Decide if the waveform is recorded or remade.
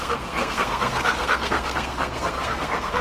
remade